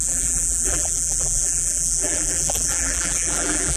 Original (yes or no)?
no